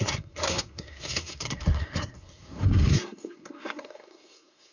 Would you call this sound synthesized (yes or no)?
yes